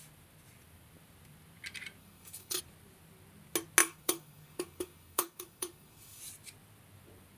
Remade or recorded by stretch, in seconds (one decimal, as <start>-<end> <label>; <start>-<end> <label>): 0.0-2.0 recorded; 2.0-2.6 remade; 2.6-3.8 recorded; 3.8-6.2 remade; 6.2-7.4 recorded